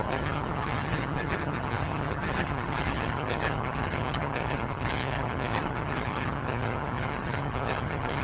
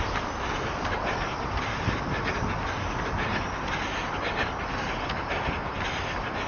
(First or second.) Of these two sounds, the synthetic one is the first